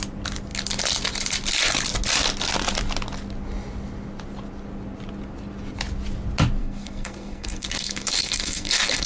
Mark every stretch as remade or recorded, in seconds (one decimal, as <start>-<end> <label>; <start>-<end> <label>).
0.0-6.6 recorded; 6.6-9.1 remade